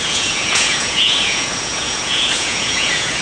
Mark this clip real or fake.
fake